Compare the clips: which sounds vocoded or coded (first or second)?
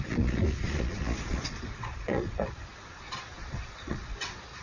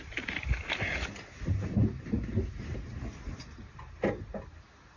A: first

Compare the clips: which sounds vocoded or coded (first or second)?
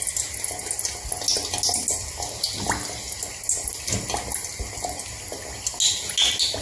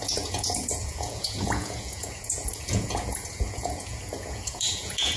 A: second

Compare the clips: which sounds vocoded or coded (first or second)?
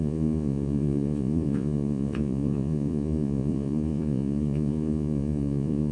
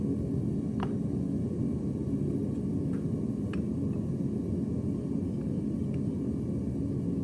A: first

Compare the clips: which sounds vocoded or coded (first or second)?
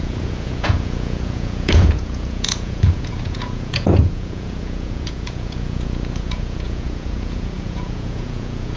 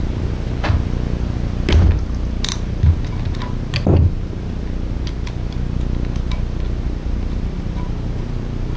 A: first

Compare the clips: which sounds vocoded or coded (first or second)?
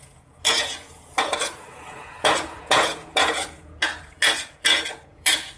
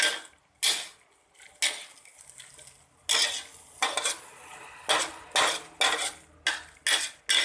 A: first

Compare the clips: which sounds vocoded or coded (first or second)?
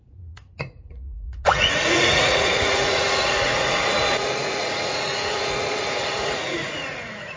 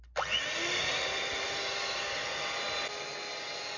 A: first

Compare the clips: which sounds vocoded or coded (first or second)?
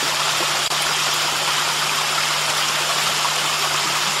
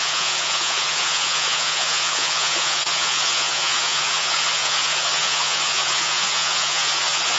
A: second